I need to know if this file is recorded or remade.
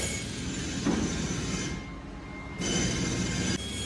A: recorded